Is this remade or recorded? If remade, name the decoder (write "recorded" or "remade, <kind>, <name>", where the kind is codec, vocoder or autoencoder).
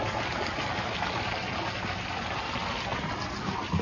recorded